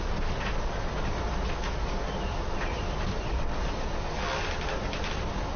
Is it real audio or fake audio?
real